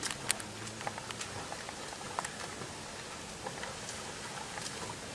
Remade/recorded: recorded